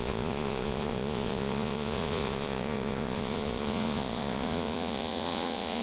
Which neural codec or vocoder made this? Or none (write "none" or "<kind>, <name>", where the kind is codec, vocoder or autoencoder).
vocoder, Vocos